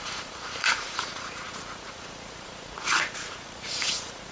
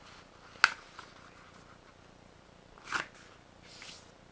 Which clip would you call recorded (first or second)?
second